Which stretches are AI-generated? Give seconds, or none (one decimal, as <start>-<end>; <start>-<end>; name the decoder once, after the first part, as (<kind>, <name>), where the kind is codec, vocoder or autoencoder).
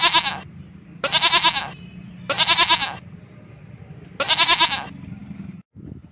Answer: none